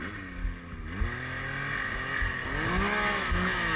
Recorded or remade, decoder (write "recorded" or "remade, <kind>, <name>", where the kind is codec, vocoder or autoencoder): recorded